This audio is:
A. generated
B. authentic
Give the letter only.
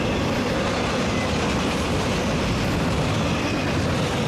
B